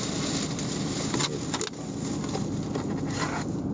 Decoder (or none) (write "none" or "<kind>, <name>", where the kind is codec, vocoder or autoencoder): none